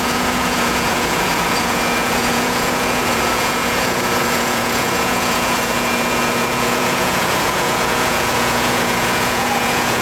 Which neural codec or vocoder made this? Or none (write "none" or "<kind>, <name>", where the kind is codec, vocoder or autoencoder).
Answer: vocoder, Vocos